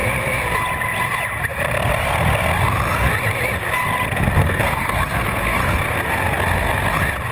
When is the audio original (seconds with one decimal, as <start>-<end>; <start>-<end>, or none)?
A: 0.0-4.4; 5.6-7.3